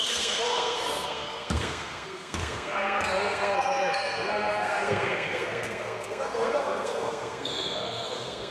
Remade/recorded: remade